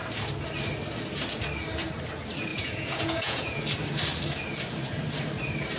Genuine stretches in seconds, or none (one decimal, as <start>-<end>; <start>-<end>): 0.0-2.5; 3.6-5.8